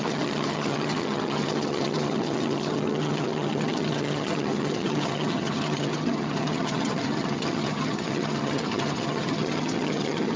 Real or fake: fake